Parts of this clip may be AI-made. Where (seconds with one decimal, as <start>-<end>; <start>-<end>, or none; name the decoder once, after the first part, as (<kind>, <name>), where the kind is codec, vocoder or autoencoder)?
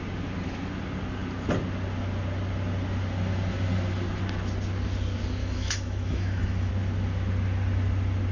5.4-6.7 (autoencoder, DAC-VAE)